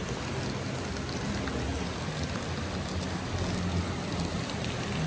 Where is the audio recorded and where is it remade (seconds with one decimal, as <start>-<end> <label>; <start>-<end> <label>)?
0.0-5.1 recorded